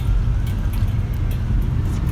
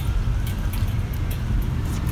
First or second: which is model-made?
second